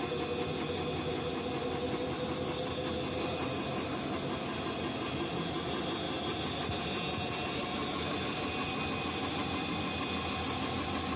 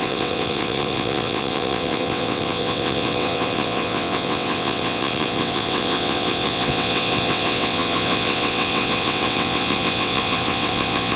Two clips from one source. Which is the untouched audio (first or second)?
first